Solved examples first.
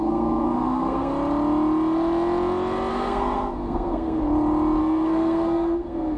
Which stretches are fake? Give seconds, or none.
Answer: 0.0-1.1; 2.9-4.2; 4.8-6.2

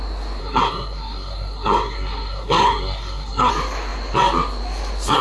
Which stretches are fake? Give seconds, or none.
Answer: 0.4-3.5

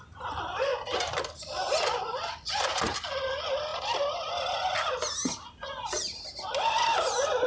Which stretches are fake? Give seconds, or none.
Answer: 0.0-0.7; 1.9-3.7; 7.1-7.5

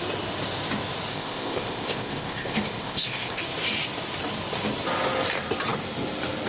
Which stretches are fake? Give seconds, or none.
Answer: 1.1-3.4

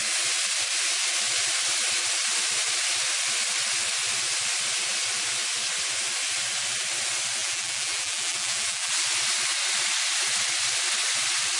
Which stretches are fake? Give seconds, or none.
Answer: 7.4-8.9

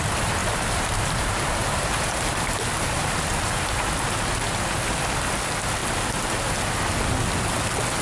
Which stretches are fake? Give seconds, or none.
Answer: 0.4-4.0

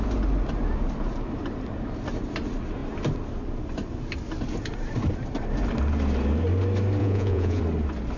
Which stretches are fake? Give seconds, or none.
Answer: 7.0-7.6

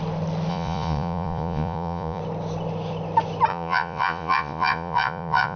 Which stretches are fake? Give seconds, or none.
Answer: 0.5-2.2; 3.5-5.6